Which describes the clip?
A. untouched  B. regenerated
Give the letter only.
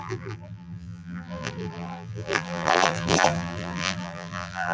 B